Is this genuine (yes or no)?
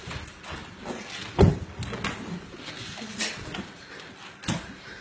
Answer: yes